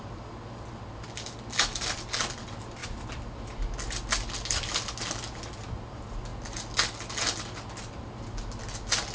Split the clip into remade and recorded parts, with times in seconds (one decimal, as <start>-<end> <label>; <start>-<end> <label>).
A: 0.0-9.1 recorded